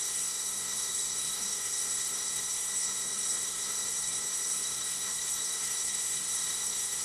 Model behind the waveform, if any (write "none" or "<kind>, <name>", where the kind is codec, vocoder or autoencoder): codec, SNAC